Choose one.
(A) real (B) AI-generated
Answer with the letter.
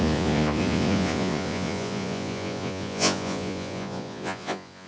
B